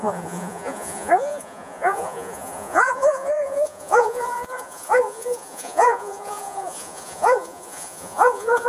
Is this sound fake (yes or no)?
yes